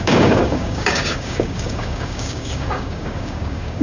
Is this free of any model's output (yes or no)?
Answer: no